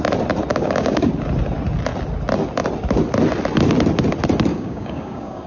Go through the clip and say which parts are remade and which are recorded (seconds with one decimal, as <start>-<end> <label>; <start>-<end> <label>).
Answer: 0.0-0.5 recorded; 0.5-1.1 remade; 1.1-4.5 recorded; 4.5-5.5 remade